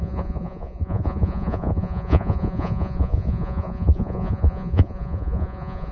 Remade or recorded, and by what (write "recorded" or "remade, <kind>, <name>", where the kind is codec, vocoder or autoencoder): remade, vocoder, Vocos